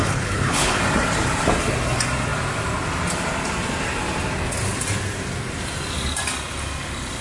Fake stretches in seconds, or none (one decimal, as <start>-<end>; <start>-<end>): 0.0-0.8